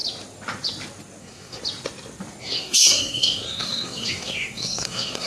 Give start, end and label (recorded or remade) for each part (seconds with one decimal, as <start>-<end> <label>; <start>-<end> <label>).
0.0-1.2 recorded; 1.2-1.6 remade; 1.6-2.4 recorded; 2.4-5.3 remade